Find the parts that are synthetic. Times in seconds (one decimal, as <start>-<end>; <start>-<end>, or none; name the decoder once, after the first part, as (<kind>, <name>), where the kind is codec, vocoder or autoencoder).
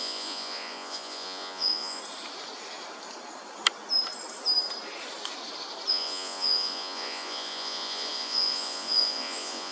0.0-2.0 (vocoder, Vocos); 5.9-9.7